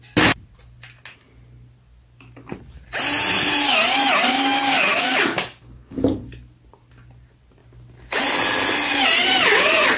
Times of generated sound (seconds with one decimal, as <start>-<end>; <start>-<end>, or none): 4.3-6.0